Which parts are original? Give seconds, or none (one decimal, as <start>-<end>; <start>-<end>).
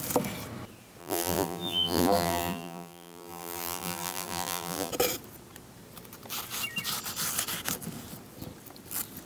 0.0-1.0; 4.9-9.3